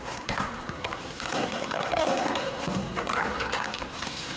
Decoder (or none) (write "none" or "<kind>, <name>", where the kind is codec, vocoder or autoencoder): codec, SNAC